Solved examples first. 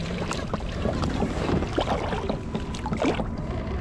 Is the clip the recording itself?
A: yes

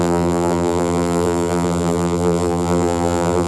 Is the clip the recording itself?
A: no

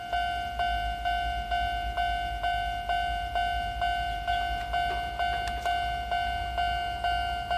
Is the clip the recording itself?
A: yes